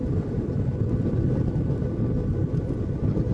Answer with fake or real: real